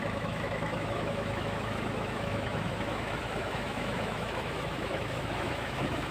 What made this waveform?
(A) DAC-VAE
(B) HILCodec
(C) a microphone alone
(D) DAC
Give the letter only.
A